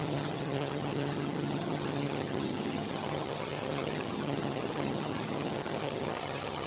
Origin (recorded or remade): remade